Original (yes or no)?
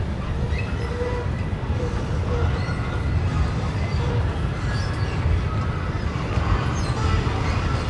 yes